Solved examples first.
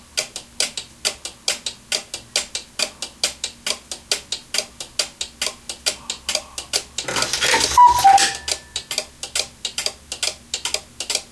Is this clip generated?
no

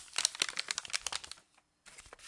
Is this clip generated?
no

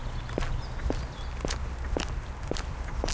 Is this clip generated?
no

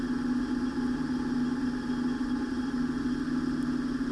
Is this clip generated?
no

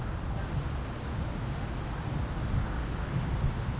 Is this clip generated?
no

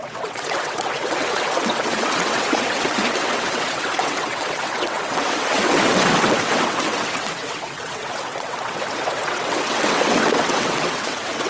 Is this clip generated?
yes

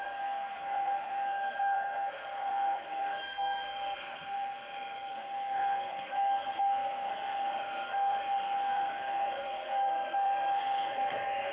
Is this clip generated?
yes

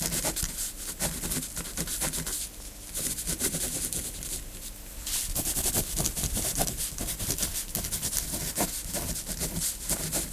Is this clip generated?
no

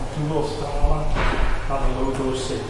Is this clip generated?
no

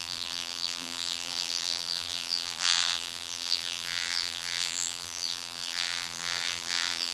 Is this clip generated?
yes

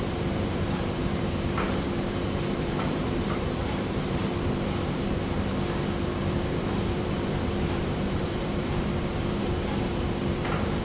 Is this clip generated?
yes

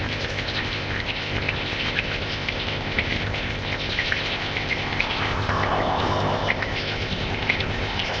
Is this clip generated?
yes